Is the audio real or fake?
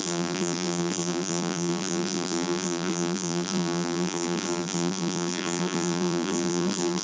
fake